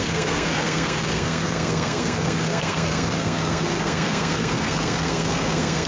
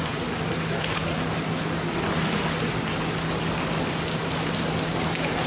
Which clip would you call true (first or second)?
second